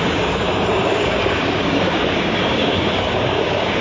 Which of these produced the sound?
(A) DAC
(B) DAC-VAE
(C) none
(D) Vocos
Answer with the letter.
A